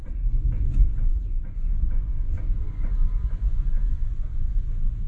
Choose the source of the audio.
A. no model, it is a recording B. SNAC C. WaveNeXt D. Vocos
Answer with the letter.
D